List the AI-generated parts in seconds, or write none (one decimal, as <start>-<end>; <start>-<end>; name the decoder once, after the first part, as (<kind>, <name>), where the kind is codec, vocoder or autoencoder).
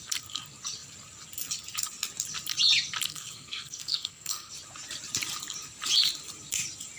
3.1-4.5 (codec, SNAC)